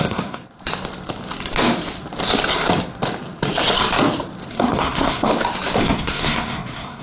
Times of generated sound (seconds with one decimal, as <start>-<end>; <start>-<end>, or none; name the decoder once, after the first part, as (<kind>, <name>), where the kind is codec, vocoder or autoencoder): 0.0-0.4 (codec, SNAC); 4.5-5.3; 5.8-7.0